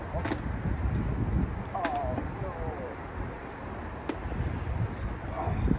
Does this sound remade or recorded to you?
recorded